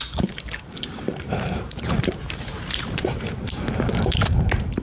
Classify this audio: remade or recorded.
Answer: remade